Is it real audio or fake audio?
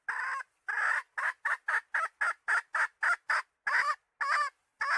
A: real